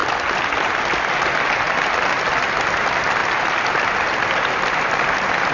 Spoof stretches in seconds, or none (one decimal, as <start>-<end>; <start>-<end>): none